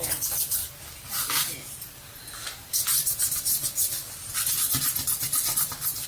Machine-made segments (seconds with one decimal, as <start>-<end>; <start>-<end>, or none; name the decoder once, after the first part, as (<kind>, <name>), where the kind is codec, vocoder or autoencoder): none